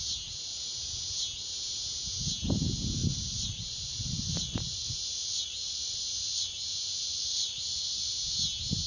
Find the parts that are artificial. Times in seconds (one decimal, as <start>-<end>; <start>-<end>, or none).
3.0-8.1

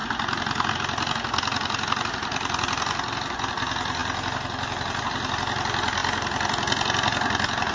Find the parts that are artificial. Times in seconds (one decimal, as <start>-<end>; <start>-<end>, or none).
none